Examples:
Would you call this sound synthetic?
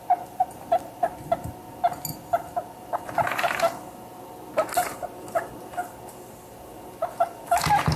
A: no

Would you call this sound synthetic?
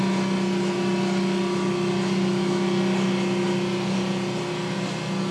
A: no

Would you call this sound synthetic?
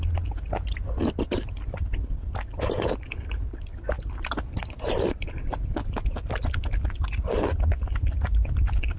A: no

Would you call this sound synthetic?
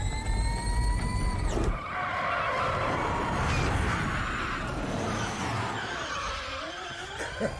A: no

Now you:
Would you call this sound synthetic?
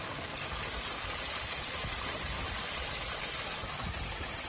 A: no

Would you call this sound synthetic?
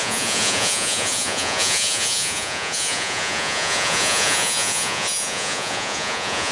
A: yes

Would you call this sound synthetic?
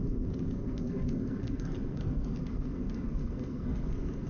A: yes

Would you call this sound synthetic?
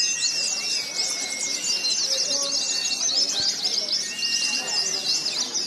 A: no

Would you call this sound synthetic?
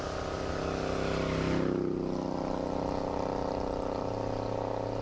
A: no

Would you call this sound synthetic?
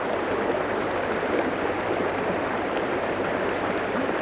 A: no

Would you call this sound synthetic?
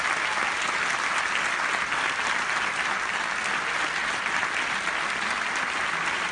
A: no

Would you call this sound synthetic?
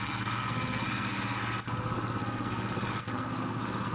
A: yes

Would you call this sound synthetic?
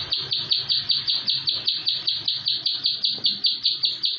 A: no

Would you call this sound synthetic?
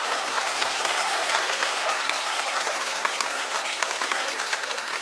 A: yes